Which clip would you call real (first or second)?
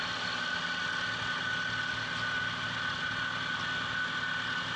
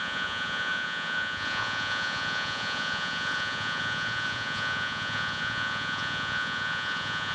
first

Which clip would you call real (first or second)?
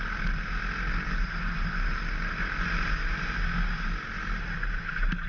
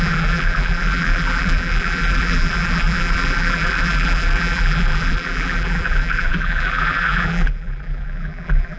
first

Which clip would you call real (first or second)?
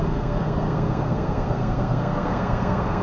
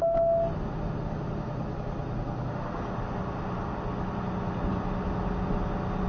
second